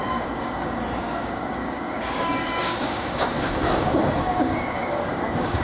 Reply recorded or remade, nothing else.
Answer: remade